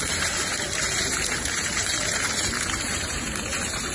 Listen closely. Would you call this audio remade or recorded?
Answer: remade